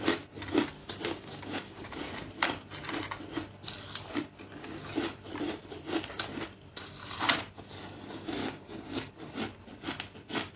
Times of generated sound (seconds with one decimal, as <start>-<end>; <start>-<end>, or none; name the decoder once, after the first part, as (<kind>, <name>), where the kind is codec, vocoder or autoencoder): 0.8-2.0 (codec, DAC); 8.4-9.1